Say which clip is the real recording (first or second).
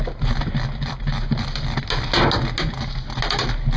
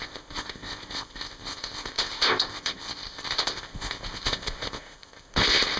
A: first